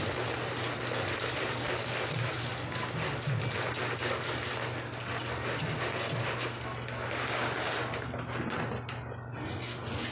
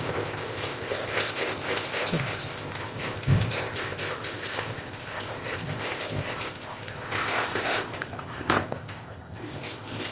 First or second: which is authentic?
first